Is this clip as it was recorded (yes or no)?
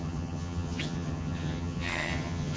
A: no